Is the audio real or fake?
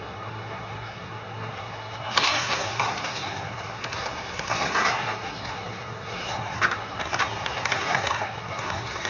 fake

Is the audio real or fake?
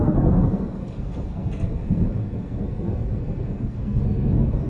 fake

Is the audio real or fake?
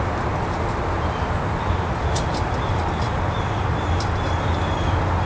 real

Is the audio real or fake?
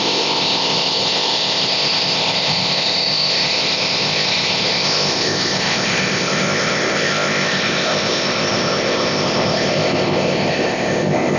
fake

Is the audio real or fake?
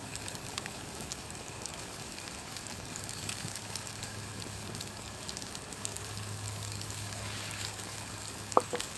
fake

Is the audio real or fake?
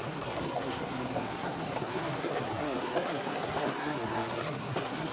fake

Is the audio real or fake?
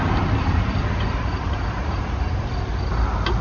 real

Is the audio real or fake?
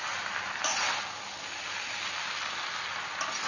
real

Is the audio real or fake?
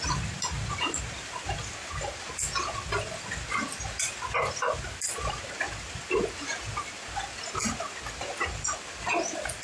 real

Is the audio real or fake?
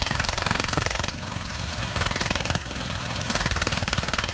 fake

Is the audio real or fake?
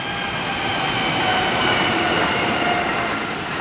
real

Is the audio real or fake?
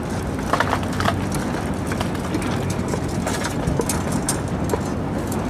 real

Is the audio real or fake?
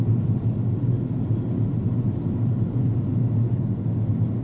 real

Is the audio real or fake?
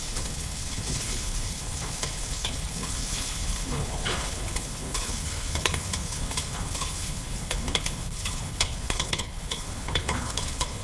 fake